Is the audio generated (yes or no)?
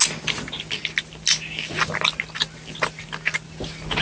no